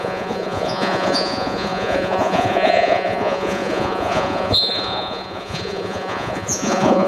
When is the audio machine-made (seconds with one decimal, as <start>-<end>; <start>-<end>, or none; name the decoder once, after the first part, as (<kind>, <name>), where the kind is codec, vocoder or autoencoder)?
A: 0.0-7.1 (vocoder, Vocos)

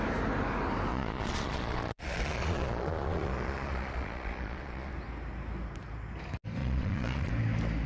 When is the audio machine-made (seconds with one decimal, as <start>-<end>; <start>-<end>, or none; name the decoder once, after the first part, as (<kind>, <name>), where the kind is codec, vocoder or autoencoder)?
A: 0.9-4.9 (vocoder, Vocos); 6.6-7.3